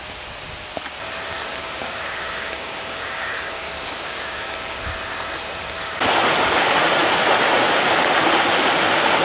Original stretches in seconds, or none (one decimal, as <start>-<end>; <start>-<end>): 0.0-1.5; 4.8-9.2